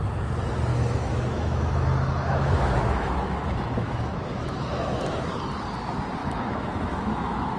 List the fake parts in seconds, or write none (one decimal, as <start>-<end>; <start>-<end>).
0.7-5.3; 6.2-7.6